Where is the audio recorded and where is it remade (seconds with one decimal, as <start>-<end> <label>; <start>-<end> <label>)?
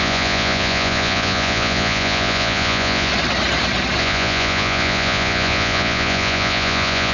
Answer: 0.0-3.1 remade; 3.1-4.0 recorded; 4.0-7.1 remade